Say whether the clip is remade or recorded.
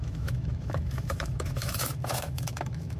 remade